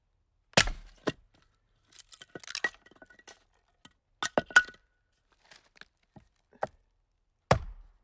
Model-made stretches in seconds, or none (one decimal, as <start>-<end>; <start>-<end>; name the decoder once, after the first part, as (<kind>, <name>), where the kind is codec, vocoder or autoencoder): none